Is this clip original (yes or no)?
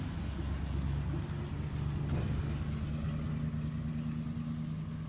yes